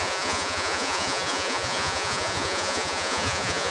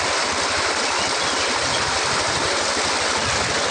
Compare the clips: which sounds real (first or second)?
second